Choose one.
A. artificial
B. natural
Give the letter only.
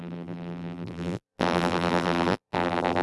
A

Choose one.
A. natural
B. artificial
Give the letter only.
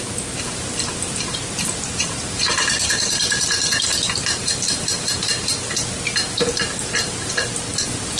B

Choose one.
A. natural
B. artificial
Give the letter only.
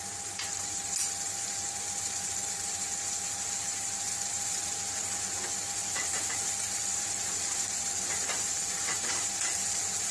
B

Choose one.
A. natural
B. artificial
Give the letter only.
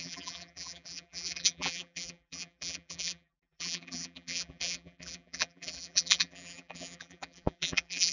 B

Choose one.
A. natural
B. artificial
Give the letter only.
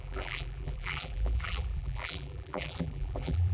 B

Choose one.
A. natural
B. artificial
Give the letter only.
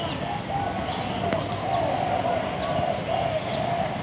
A